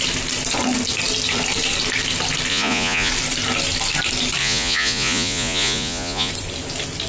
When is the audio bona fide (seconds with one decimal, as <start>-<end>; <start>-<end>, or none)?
0.0-2.5; 3.1-4.4; 6.3-7.1